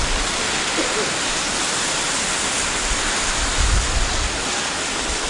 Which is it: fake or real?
fake